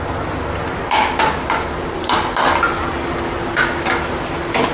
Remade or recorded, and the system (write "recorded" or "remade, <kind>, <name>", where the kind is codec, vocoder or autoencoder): recorded